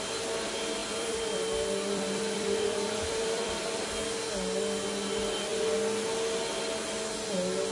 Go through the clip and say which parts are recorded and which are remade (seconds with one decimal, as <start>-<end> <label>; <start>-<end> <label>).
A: 0.0-0.8 recorded; 0.8-3.8 remade; 3.8-7.7 recorded